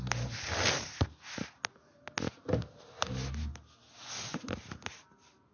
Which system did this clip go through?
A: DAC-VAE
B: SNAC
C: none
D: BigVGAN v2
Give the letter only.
C